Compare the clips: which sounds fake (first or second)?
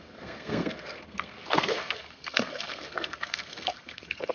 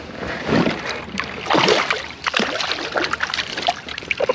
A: first